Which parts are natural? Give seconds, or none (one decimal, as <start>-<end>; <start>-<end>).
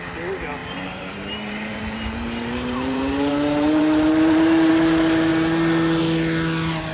0.0-0.6; 4.7-6.9